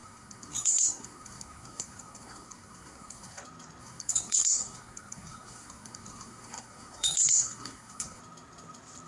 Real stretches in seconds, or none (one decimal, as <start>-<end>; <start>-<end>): 3.4-3.8; 8.2-9.1